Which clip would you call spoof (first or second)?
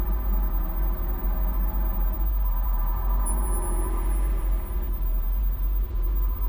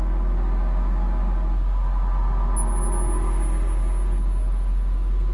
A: first